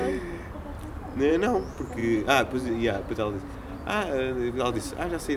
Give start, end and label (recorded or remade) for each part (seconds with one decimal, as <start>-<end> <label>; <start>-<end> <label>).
0.0-5.4 recorded